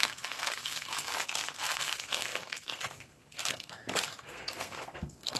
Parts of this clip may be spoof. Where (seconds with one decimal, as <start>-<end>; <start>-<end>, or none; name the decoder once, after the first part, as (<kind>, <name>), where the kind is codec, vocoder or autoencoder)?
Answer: 0.0-5.4 (codec, SNAC)